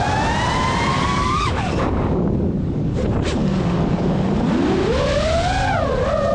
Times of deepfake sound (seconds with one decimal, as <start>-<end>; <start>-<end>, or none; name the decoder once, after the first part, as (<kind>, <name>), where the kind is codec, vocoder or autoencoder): 0.9-3.0 (codec, DAC); 3.4-4.3